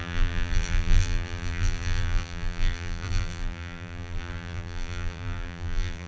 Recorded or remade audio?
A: remade